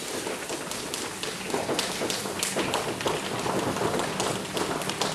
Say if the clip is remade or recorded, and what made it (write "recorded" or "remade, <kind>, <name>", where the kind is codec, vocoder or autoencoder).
recorded